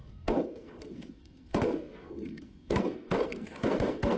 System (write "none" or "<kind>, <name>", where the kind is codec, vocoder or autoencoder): codec, SNAC